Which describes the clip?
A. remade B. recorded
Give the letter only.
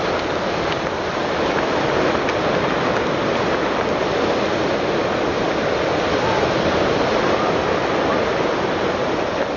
B